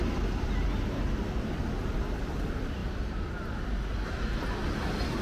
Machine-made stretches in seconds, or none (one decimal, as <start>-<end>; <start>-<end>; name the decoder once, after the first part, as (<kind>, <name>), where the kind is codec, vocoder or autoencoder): none

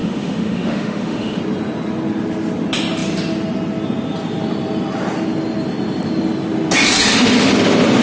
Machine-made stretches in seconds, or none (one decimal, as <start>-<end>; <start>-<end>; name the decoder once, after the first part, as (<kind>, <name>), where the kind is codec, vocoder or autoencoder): 0.0-1.4 (autoencoder, DAC-VAE)

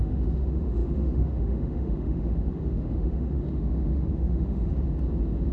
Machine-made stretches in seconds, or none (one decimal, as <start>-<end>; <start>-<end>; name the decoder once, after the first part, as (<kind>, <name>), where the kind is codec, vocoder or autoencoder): 0.0-4.7 (autoencoder, DAC-VAE)

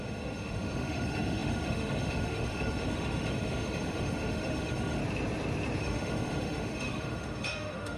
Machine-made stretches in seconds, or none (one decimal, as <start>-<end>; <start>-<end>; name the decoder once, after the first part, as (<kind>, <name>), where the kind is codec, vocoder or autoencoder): 0.0-5.0 (autoencoder, DAC-VAE); 5.8-8.0

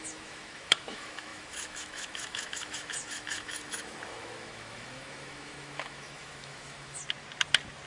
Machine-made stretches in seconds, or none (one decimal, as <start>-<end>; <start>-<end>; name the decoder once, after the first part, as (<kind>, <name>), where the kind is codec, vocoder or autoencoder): 0.0-7.0 (autoencoder, DAC-VAE)